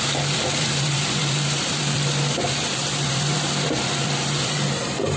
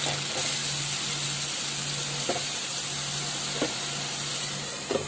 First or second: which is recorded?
second